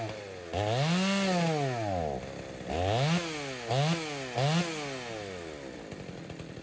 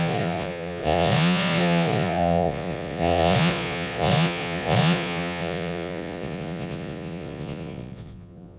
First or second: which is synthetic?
second